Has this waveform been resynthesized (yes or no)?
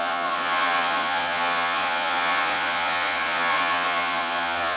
yes